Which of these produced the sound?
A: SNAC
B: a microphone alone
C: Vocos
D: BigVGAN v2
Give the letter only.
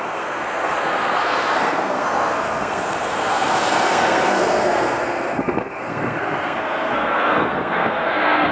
A